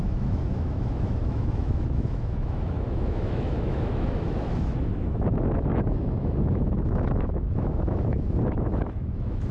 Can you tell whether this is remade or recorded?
remade